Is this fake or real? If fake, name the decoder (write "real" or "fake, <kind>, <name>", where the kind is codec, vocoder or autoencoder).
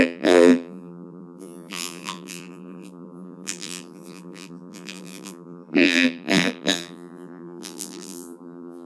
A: fake, vocoder, BigVGAN v2